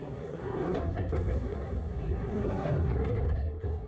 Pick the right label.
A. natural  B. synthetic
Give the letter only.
B